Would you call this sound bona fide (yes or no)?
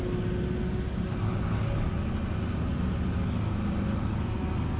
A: yes